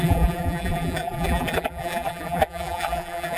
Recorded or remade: remade